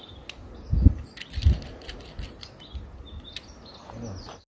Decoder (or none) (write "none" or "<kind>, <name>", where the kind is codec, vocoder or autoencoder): none